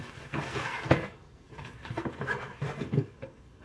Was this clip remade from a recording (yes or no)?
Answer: yes